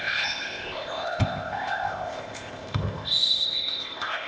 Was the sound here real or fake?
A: fake